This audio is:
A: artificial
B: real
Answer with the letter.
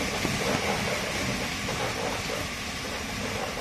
B